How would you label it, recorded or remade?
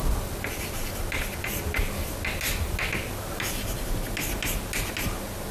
recorded